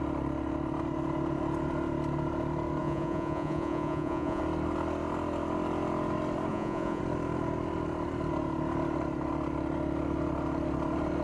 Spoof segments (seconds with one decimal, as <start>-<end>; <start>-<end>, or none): 2.8-4.4; 6.5-7.0